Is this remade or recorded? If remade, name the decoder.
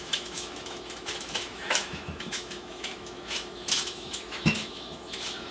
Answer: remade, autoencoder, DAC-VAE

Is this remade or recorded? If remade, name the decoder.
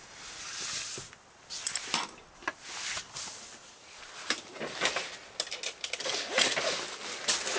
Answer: recorded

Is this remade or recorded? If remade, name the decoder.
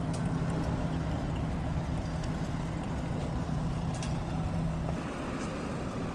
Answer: recorded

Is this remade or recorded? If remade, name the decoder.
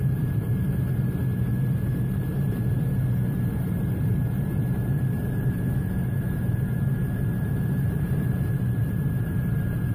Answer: remade, vocoder, BigVGAN v2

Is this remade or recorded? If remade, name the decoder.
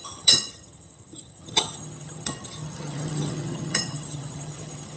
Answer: remade, vocoder, HiFi-GAN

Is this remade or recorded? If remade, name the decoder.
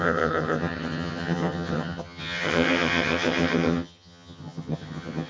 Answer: remade, vocoder, HiFi-GAN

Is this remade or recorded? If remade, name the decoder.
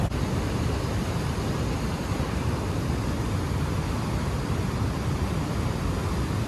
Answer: recorded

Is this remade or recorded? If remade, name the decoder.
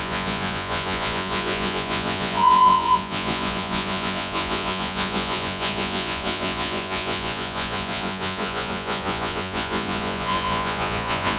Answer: remade, vocoder, Vocos